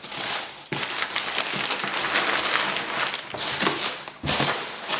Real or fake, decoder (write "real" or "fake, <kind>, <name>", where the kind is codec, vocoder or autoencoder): real